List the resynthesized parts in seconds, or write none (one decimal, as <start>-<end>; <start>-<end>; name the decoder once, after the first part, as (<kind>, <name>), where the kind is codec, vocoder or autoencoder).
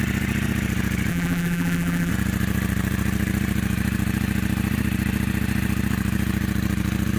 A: 1.1-2.1 (vocoder, BigVGAN v2)